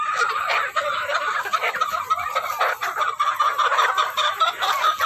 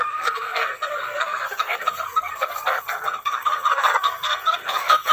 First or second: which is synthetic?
second